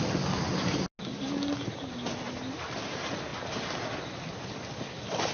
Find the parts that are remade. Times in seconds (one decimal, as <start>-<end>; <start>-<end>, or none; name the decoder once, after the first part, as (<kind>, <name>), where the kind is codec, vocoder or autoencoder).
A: none